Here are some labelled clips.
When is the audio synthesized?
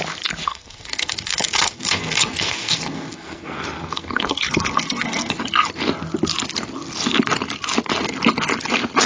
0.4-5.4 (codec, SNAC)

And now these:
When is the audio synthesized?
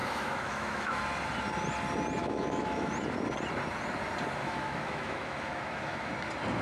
0.0-1.0 (autoencoder, DAC-VAE); 2.2-2.9; 4.4-6.1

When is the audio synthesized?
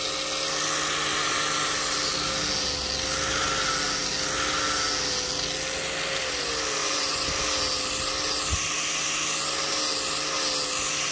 6.8-7.3 (vocoder, Vocos)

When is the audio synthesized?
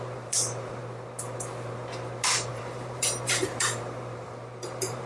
0.0-0.8 (vocoder, BigVGAN v2); 2.5-5.1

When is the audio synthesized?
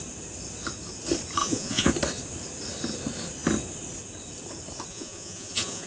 1.4-1.9 (vocoder, Vocos); 4.9-5.9